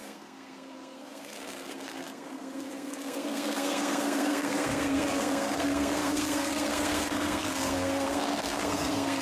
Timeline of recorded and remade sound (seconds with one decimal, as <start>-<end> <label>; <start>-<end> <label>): 0.0-9.2 remade